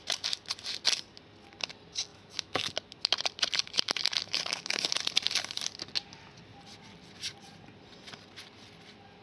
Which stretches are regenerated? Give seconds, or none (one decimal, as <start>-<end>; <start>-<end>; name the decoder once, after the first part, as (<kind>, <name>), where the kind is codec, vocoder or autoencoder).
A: 2.1-2.7 (autoencoder, DAC-VAE); 4.2-4.9